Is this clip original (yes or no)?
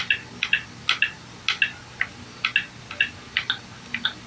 yes